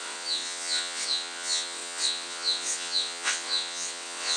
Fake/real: fake